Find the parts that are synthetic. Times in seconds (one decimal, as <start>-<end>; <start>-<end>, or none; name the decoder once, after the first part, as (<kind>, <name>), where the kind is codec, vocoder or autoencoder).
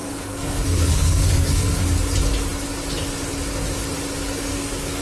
0.0-1.9 (codec, SNAC); 4.5-5.0